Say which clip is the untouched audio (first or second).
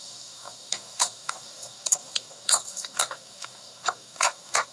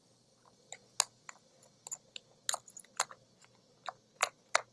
second